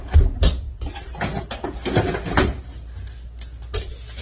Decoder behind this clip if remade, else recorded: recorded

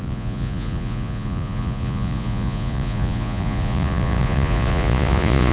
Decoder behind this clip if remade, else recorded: remade, vocoder, Vocos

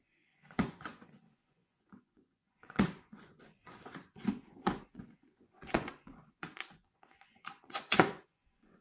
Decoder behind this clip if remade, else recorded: remade, vocoder, Vocos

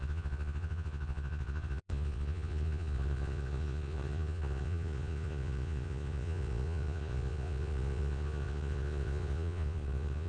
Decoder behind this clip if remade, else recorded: remade, vocoder, Vocos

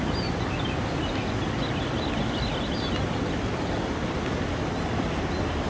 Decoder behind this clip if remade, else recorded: recorded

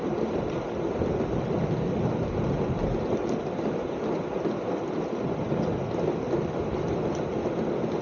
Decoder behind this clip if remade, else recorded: recorded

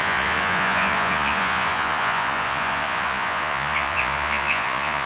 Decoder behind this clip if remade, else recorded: remade, vocoder, Vocos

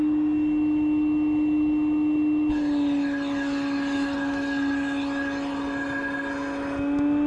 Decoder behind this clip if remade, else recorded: recorded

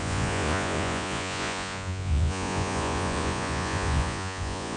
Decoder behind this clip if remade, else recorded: remade, vocoder, Vocos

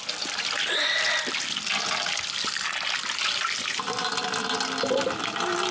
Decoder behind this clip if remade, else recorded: recorded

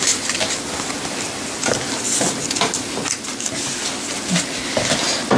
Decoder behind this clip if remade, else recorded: recorded